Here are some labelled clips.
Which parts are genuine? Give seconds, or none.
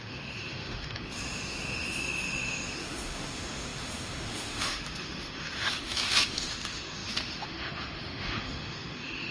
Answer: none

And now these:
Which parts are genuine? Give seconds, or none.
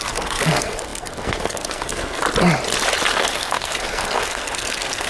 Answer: 2.2-3.1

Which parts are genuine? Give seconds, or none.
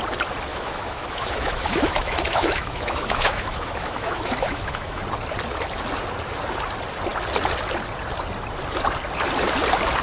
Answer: 0.0-0.5; 5.0-10.0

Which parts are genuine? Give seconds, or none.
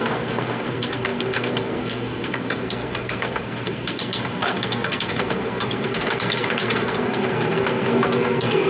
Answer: none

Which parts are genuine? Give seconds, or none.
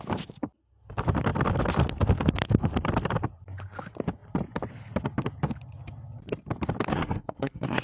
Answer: 0.0-6.9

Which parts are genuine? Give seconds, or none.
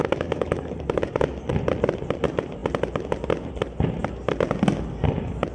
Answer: 1.5-5.5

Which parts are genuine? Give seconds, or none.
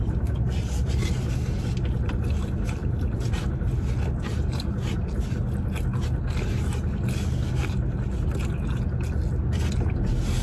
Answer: 0.0-2.8; 3.8-10.4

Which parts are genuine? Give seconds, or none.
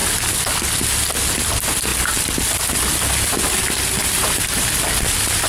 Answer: 0.0-4.0; 4.7-5.5